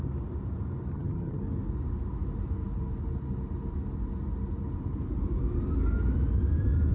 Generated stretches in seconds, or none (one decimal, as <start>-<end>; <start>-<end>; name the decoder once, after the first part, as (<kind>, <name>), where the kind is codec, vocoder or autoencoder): 0.9-1.4 (vocoder, HiFi-GAN)